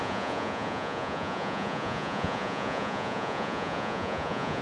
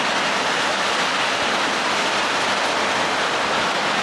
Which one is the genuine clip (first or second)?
second